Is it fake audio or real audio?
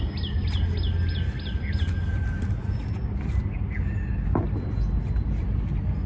real